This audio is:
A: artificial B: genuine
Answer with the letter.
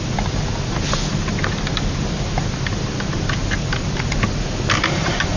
B